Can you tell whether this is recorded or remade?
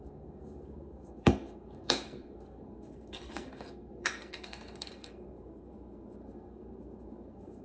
remade